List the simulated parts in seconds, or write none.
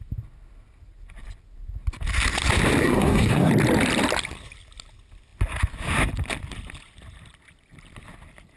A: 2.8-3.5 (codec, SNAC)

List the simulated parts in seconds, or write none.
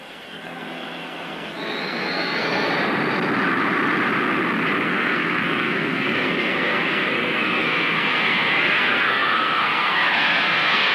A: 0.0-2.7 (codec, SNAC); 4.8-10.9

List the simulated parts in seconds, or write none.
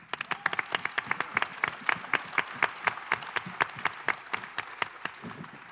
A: none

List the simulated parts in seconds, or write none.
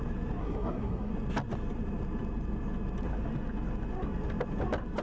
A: 0.4-1.1 (codec, SNAC)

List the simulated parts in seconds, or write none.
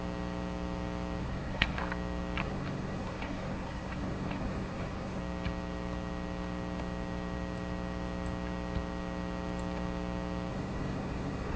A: 1.2-1.8 (codec, SNAC); 2.4-5.2; 10.5-11.6